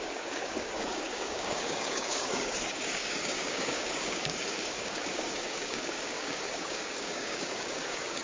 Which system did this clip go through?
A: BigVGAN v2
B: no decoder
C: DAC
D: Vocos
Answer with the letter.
C